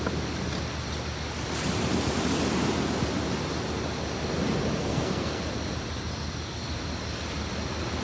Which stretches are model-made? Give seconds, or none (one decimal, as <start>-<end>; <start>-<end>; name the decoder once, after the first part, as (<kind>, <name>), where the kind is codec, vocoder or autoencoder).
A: 4.8-5.4 (codec, SNAC)